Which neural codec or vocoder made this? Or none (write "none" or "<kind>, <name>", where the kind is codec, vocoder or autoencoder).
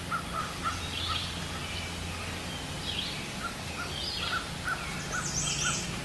none